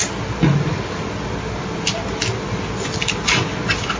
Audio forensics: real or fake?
real